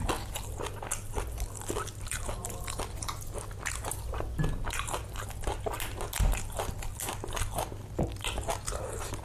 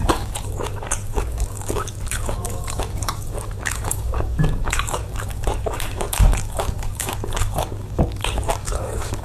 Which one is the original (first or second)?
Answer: first